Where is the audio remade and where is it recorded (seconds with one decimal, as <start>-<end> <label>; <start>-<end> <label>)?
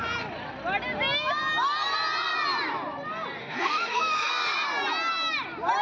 0.0-3.4 recorded; 3.4-4.3 remade; 4.3-5.8 recorded